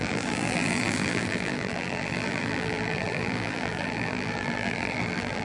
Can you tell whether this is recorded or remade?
remade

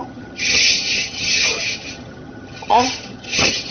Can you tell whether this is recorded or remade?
remade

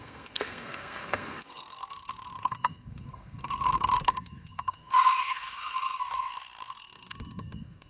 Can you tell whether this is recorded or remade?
remade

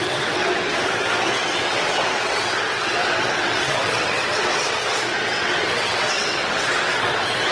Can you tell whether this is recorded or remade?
remade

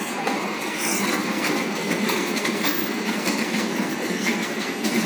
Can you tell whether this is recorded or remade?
remade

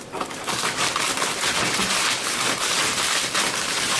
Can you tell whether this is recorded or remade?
recorded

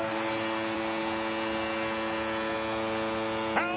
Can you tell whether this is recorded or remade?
recorded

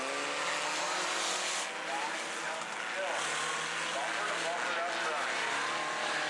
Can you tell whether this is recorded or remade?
recorded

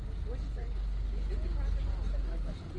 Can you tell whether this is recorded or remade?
recorded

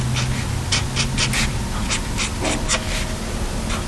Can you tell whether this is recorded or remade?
recorded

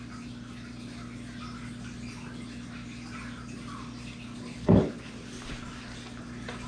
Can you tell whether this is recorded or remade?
recorded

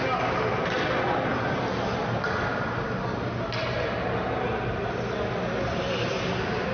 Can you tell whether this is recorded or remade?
recorded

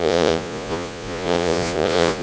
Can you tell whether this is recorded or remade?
remade